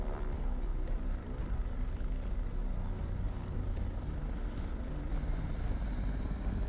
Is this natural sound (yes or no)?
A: no